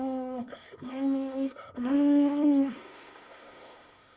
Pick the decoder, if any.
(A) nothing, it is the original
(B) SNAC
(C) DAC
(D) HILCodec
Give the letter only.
B